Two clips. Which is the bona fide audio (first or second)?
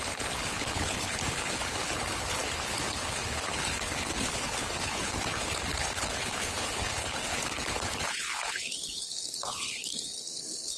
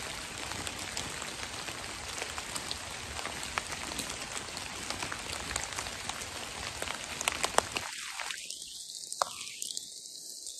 second